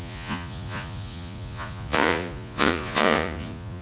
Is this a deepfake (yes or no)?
yes